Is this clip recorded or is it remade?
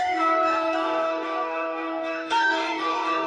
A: remade